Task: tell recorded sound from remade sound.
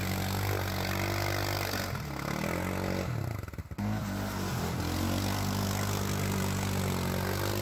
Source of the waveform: recorded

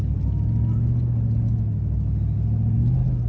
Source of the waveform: recorded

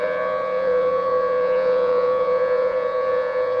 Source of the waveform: remade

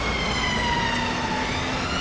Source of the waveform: recorded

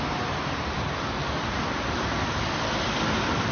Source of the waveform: remade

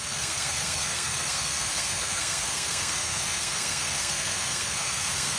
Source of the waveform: remade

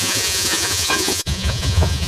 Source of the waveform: remade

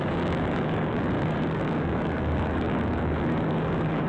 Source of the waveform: remade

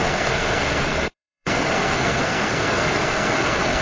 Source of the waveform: remade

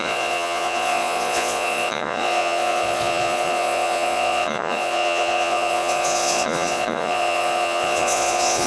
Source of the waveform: remade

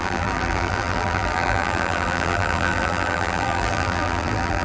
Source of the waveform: remade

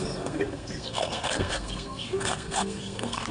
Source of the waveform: remade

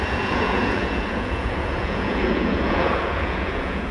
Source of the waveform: remade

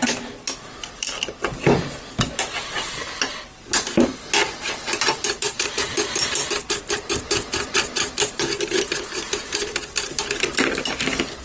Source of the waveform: recorded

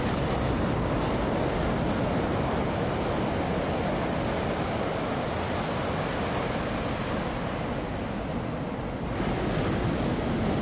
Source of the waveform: recorded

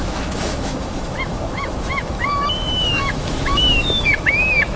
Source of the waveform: remade